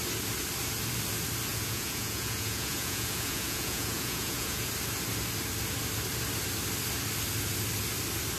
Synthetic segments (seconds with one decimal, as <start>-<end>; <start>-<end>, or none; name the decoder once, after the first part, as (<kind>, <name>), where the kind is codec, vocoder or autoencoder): 1.5-4.7 (vocoder, Vocos)

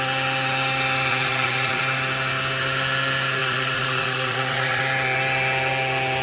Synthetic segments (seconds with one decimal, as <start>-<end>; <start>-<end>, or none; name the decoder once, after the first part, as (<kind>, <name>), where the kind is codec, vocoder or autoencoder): 1.1-1.8 (vocoder, Vocos); 3.4-4.8

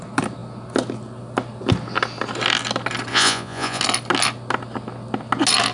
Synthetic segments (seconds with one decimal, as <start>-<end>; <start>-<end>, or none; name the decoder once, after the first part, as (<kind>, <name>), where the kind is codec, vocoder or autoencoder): 3.1-3.8 (vocoder, Vocos)

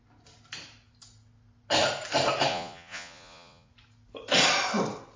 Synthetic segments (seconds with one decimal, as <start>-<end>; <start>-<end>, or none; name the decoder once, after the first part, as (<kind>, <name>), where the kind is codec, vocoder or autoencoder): 2.5-3.7 (vocoder, Vocos)

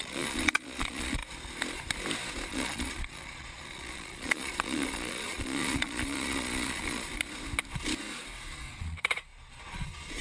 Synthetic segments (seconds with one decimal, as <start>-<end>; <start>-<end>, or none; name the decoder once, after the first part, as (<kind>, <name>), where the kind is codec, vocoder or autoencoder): 0.0-1.2 (vocoder, Vocos); 2.5-7.1; 8.7-10.2

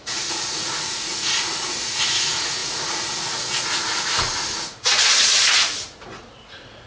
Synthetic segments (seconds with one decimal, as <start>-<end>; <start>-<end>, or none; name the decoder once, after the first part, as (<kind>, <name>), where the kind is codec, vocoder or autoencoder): 0.0-6.9 (vocoder, Vocos)

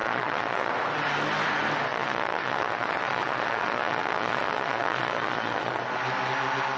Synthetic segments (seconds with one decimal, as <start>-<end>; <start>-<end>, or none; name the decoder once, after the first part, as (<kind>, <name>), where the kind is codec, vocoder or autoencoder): 0.0-0.7 (vocoder, Vocos); 1.9-5.8

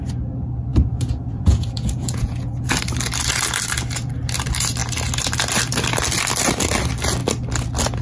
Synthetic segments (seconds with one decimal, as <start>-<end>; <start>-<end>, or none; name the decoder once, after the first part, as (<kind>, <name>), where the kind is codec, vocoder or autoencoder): 0.7-2.7 (vocoder, Vocos)